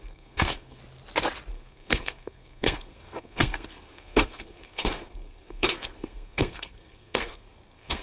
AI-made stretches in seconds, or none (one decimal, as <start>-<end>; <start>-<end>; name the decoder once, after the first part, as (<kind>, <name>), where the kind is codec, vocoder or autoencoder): 0.0-0.8 (codec, SNAC); 1.5-8.0